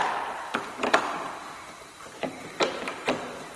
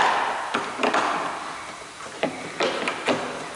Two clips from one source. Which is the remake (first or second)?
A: first